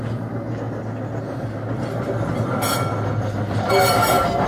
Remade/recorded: recorded